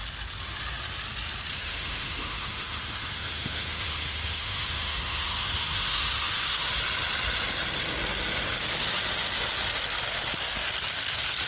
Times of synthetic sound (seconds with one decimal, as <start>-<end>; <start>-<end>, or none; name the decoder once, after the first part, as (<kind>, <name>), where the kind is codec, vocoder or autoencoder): 1.5-6.7 (autoencoder, DAC-VAE)